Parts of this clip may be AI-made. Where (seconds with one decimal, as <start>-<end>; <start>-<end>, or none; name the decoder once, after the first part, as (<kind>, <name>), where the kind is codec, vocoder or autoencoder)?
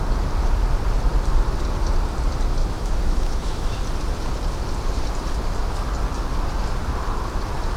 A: 2.6-3.8 (autoencoder, DAC-VAE)